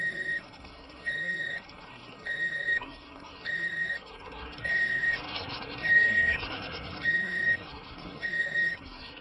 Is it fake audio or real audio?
fake